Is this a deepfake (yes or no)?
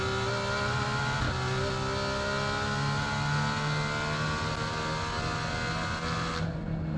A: no